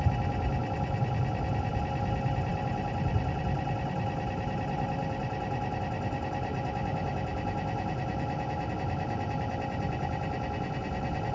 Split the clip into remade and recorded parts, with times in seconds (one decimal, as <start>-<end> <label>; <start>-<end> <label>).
0.0-0.6 recorded; 0.6-1.4 remade; 1.4-2.5 recorded; 2.5-3.4 remade; 3.4-11.3 recorded